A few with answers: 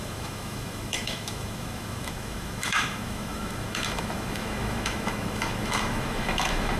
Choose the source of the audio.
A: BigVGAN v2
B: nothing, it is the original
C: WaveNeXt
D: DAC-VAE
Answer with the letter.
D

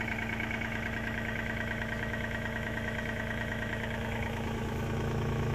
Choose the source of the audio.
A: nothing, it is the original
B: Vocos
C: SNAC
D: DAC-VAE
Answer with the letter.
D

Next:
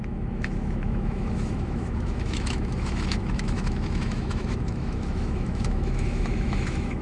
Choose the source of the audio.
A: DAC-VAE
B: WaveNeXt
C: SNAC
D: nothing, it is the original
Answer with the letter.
A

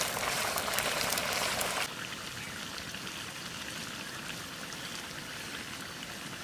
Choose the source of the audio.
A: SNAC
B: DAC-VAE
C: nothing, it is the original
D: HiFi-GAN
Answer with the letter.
C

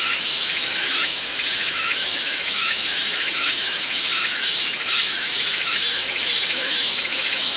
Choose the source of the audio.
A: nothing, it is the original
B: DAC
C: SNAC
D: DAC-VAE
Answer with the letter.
D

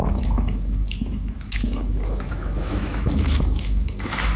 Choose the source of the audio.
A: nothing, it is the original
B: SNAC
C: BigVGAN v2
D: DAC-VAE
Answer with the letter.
D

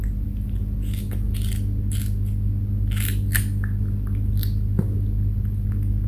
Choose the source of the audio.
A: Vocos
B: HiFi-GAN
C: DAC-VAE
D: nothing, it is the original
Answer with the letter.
D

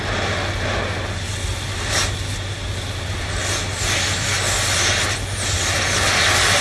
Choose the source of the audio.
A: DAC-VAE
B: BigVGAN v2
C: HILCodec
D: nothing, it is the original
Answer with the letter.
D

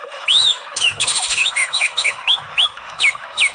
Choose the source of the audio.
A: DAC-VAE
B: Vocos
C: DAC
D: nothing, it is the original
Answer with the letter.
A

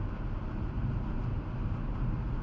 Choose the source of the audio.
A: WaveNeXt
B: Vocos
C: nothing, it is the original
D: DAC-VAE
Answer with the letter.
C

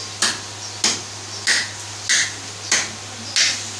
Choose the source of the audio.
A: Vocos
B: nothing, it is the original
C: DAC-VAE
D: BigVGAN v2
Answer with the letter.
B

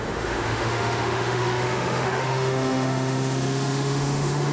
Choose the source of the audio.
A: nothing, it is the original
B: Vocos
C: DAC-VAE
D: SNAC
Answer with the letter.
C